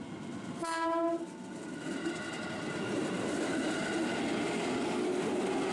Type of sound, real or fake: real